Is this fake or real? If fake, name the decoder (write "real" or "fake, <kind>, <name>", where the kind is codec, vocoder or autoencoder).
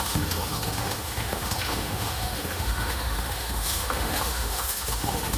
fake, autoencoder, DAC-VAE